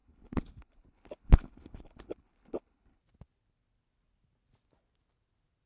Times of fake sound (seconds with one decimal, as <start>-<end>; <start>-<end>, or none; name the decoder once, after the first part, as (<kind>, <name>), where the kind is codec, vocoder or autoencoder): 0.0-3.0 (codec, HILCodec)